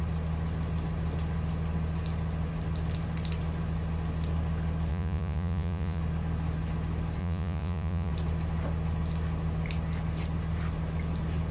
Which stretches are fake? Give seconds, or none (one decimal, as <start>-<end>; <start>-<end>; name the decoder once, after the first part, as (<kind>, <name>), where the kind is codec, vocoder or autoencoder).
4.9-6.0 (vocoder, Vocos); 7.2-8.1